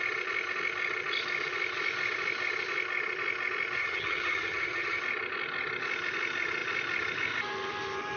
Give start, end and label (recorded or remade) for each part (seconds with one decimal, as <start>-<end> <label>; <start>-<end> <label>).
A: 0.0-3.8 recorded; 3.8-5.0 remade; 5.0-8.2 recorded